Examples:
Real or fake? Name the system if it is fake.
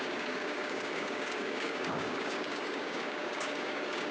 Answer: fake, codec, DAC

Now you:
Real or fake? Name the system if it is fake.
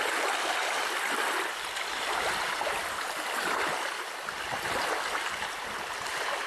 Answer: real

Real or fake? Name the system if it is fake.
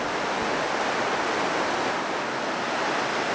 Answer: real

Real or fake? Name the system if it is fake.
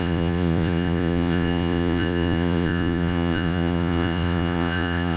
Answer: fake, vocoder, Vocos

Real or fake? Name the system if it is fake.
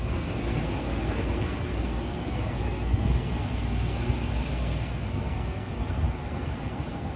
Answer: fake, codec, SNAC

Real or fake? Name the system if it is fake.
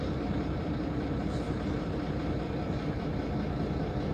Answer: fake, vocoder, BigVGAN v2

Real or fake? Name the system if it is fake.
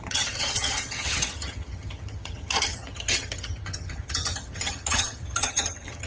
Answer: fake, vocoder, HiFi-GAN